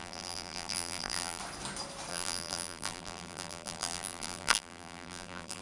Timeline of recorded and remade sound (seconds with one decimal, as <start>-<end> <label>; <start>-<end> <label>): 0.0-1.4 remade; 1.4-2.1 recorded; 2.1-5.6 remade